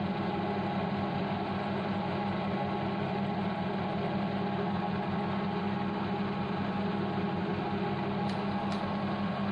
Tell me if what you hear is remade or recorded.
recorded